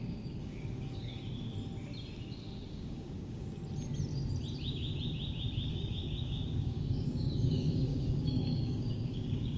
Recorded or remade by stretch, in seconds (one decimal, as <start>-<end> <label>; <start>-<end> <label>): 0.0-1.2 remade; 1.2-2.7 recorded; 2.7-3.6 remade; 3.6-5.7 recorded; 5.7-9.6 remade